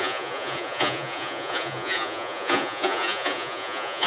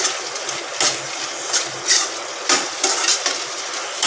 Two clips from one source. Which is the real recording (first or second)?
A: second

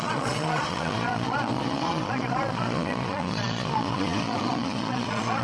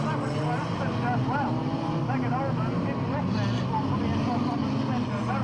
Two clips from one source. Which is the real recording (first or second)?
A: second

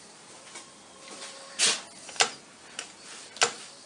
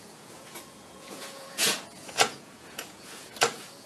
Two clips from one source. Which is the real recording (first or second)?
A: first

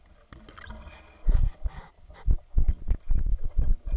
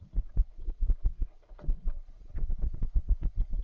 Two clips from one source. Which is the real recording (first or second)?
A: first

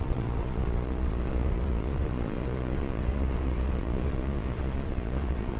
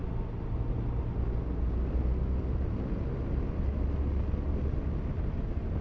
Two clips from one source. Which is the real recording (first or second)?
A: second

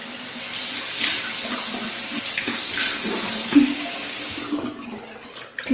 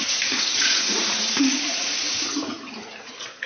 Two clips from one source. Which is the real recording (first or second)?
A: first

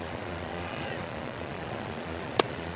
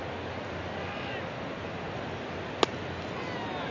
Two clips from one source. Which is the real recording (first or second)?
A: second